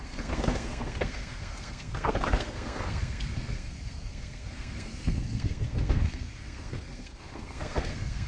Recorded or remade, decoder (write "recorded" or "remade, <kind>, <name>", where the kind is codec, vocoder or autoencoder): remade, codec, SNAC